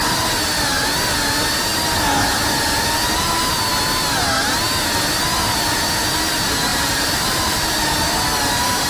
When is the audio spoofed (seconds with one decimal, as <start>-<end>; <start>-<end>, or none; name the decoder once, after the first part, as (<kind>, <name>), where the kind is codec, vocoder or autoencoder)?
6.7-7.8 (vocoder, BigVGAN v2)